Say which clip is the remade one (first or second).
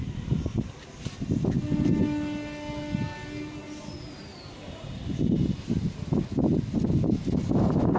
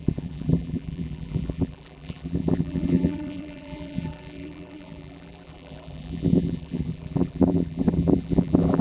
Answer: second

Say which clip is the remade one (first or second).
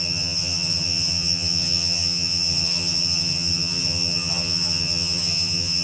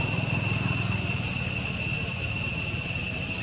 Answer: first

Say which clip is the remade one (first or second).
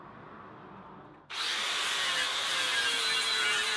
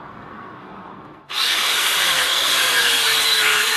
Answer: second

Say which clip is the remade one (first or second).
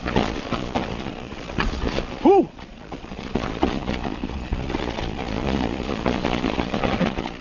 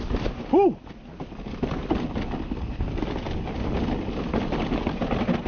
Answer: first